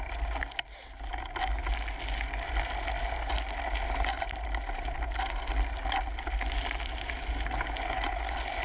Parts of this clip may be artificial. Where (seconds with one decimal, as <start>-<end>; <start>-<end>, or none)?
none

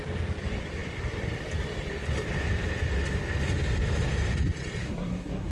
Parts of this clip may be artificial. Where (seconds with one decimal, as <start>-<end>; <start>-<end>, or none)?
4.8-5.5